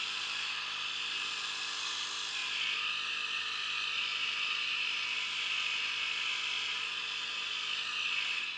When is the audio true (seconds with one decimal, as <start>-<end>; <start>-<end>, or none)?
0.0-8.6